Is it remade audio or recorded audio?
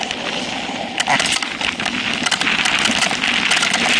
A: recorded